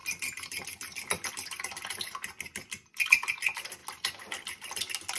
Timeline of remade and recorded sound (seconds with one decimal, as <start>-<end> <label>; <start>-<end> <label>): 0.0-5.2 recorded